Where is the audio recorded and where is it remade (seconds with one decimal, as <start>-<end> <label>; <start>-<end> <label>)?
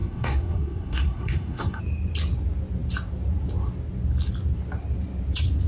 0.0-1.8 remade; 1.8-5.7 recorded